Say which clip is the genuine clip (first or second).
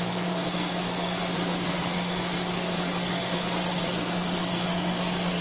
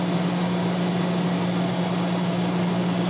second